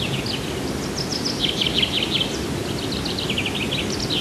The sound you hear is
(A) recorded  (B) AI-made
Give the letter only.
A